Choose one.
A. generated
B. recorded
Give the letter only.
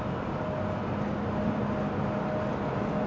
B